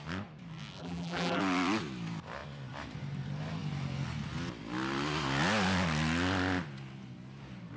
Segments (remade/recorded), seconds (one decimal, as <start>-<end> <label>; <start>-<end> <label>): 0.0-0.8 recorded; 0.8-1.4 remade; 1.4-7.8 recorded